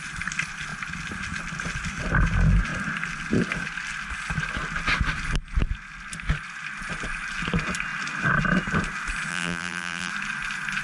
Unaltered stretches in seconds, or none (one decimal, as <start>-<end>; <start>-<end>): 0.0-9.3; 10.1-10.8